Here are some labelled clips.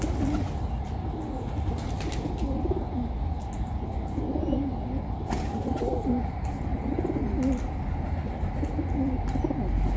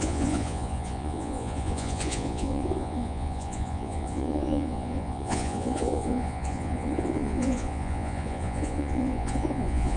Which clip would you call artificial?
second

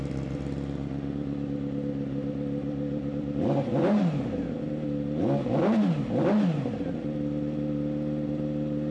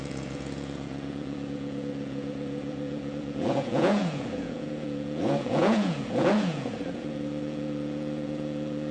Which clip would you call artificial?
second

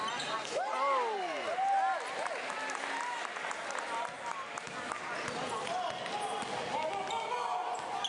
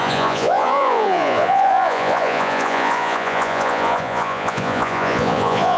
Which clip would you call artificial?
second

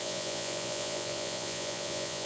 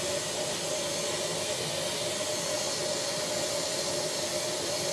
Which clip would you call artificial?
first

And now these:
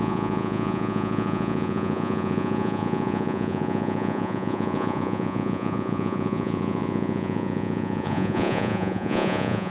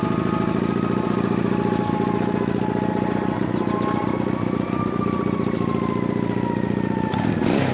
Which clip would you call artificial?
first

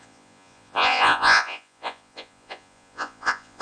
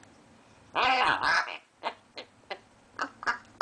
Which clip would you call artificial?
first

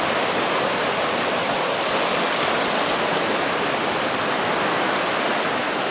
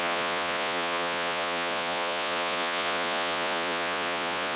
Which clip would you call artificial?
second